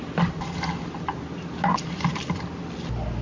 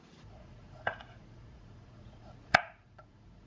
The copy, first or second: second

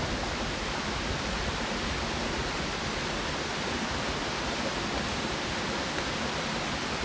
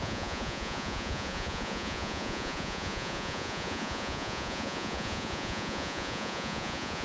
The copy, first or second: second